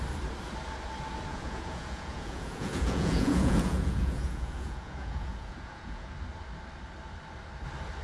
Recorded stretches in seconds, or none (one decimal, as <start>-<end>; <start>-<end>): 0.0-1.3; 6.1-8.0